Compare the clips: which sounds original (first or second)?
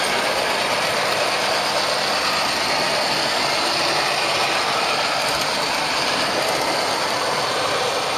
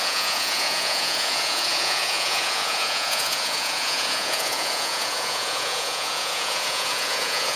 first